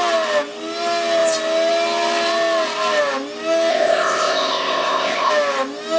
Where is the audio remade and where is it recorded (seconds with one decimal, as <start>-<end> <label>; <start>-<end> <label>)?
0.0-3.7 recorded; 3.7-5.3 remade; 5.3-6.0 recorded